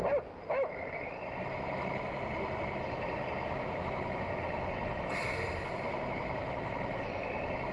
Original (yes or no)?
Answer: yes